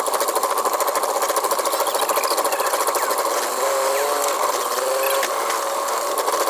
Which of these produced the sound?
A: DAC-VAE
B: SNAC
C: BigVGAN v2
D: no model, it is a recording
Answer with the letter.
D